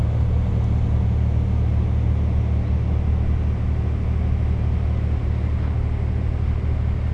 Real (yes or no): yes